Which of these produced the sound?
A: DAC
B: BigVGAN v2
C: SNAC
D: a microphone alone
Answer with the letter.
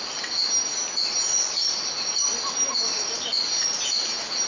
D